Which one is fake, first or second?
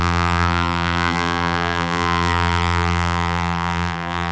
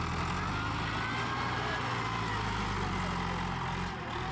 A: first